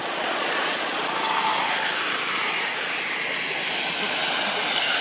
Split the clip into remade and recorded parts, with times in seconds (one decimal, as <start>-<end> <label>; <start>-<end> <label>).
0.0-1.0 remade; 1.0-5.0 recorded